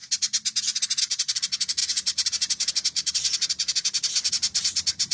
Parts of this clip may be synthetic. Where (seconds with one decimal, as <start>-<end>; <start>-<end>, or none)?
1.0-5.1